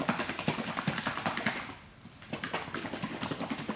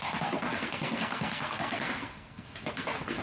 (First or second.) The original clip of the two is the first